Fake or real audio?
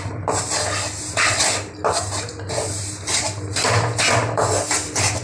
real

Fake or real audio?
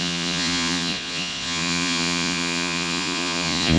fake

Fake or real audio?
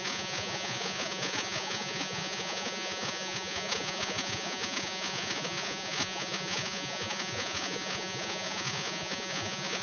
fake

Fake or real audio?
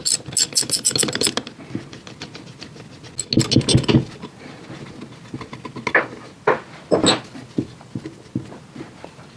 real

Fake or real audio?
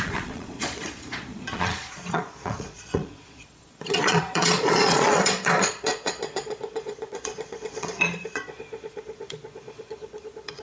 fake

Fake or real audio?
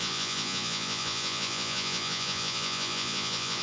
fake